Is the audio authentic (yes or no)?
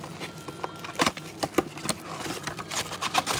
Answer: yes